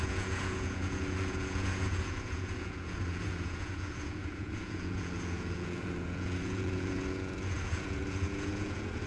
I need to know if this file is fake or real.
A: fake